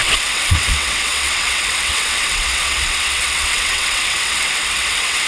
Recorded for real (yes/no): no